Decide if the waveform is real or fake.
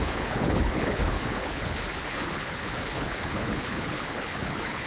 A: fake